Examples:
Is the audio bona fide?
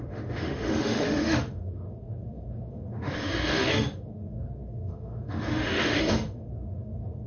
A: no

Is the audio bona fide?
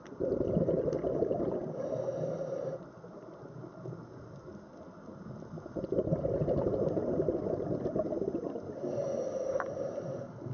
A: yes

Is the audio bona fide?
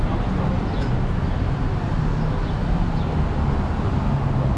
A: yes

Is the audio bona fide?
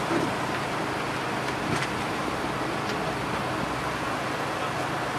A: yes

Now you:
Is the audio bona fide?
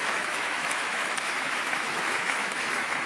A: no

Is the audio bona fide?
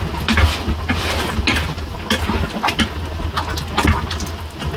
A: yes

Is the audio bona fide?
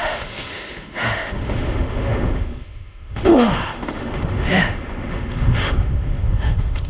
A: no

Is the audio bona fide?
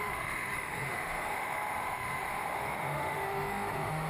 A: no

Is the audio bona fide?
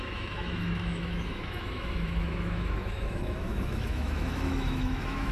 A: no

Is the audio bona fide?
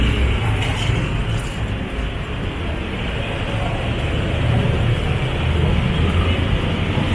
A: yes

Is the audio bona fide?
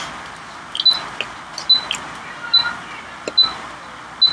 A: yes